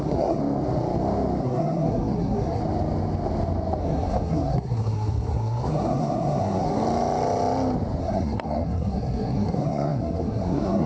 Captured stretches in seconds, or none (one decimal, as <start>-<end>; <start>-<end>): 0.4-1.4; 2.6-3.8; 6.8-8.0